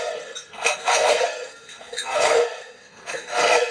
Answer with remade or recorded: remade